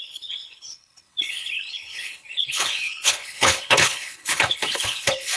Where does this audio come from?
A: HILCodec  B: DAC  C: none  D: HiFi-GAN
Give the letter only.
A